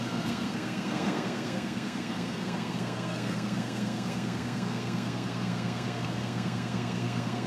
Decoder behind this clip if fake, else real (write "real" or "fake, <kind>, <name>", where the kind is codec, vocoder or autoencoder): fake, codec, SNAC